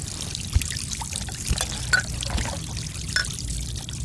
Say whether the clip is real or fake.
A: real